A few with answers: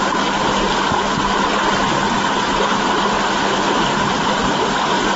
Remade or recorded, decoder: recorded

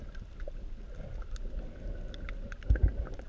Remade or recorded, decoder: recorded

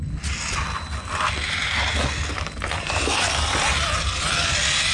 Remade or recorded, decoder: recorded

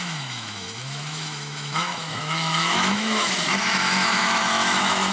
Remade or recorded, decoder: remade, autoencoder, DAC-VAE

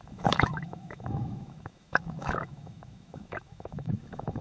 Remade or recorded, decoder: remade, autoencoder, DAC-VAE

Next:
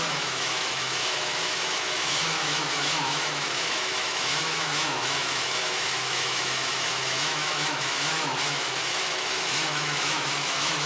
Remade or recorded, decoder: remade, autoencoder, DAC-VAE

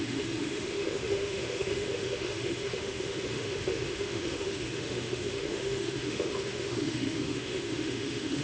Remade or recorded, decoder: remade, autoencoder, DAC-VAE